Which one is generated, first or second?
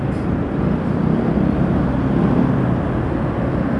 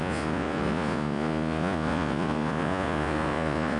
second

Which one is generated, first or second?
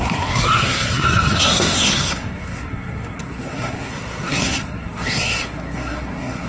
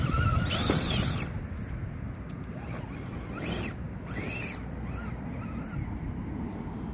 first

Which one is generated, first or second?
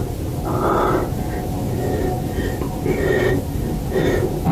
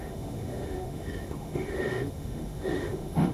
second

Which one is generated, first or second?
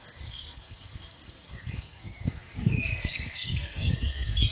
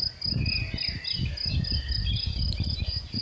first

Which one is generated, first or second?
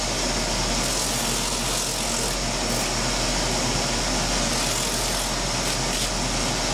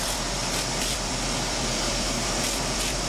second